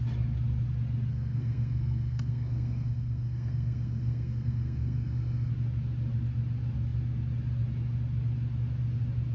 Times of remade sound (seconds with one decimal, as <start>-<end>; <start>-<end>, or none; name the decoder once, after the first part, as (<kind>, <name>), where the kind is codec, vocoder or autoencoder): 1.1-5.5 (codec, SNAC)